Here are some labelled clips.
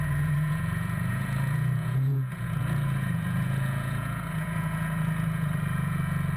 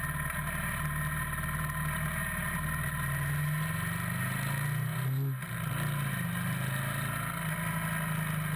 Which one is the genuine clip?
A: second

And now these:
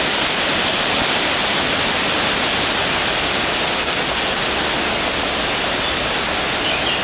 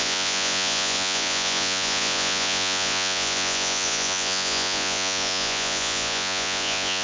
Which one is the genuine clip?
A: first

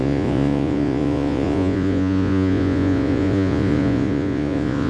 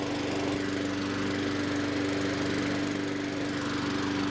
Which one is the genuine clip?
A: second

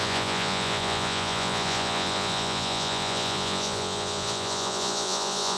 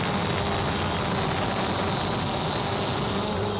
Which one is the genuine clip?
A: second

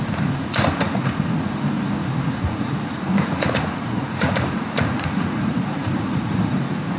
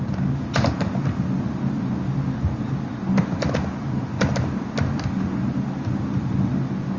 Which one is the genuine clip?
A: second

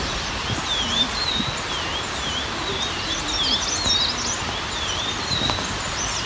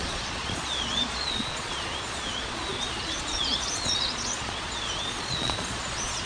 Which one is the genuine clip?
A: first